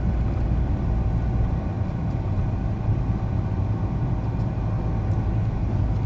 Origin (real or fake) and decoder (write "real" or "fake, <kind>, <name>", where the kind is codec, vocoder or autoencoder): real